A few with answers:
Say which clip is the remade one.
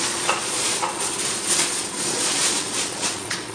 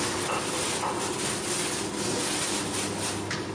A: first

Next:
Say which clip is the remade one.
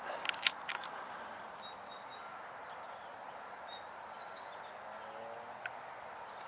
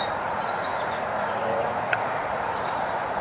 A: second